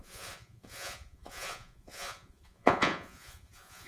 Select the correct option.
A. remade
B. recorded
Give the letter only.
A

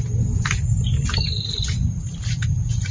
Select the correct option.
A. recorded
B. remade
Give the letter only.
A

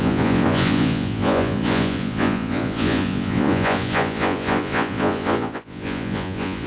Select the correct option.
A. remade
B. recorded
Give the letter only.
A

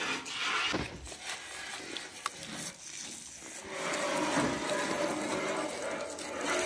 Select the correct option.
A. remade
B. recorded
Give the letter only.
B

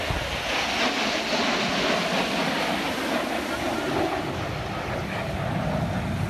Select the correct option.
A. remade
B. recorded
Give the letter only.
B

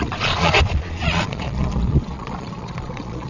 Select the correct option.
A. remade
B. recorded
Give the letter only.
A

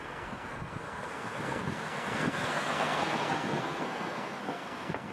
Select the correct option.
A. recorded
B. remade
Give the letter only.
B